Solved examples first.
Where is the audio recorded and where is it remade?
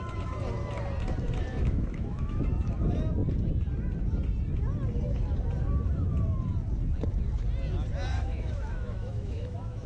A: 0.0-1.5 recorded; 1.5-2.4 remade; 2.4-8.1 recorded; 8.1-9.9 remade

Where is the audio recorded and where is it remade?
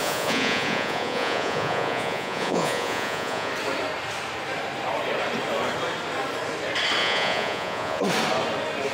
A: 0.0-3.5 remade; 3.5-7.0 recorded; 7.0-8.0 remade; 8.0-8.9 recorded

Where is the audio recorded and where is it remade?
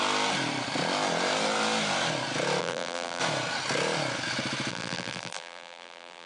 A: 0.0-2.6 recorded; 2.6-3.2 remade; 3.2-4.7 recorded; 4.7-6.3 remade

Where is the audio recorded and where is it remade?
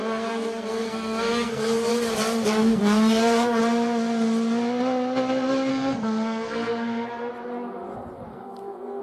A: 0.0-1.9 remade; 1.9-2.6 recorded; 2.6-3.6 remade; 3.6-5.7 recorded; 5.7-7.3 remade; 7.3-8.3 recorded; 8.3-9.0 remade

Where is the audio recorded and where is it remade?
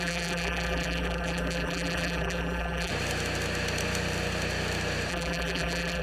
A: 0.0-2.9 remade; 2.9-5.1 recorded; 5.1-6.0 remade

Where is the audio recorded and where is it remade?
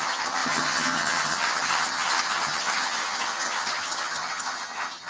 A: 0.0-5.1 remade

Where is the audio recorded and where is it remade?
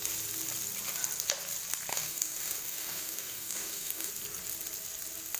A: 0.0-1.9 recorded; 1.9-4.1 remade; 4.1-5.4 recorded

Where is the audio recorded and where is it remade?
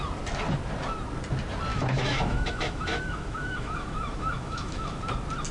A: 0.0-1.7 recorded; 1.7-5.0 remade; 5.0-5.5 recorded